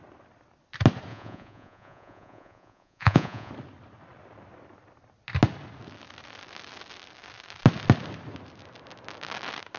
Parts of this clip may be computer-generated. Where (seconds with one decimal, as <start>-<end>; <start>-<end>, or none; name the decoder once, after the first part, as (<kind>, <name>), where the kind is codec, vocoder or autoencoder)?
1.1-3.5 (vocoder, Vocos)